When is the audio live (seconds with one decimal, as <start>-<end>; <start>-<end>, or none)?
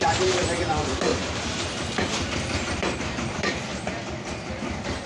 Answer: 3.7-5.1